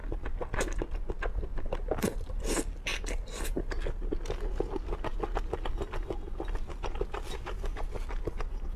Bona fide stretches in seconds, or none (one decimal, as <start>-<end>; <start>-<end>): 0.0-8.8